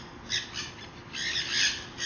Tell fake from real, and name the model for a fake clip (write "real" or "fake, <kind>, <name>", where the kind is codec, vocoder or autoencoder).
real